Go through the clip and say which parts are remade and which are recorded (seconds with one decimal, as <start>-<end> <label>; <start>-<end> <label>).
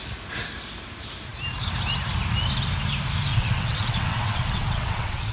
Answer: 0.0-3.3 recorded; 3.3-5.3 remade